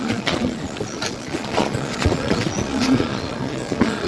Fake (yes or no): yes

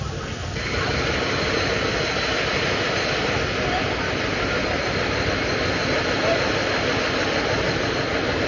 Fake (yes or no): no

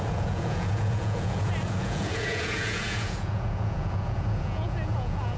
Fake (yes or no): yes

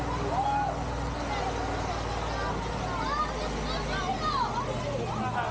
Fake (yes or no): no